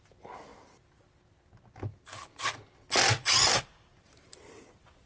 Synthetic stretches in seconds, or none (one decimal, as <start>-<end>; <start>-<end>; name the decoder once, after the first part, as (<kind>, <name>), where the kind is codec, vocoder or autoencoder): none